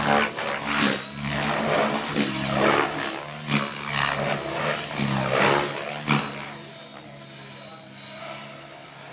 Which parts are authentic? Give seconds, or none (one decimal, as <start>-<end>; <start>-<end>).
0.0-9.1